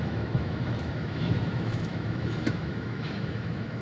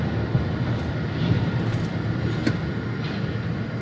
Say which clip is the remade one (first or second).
first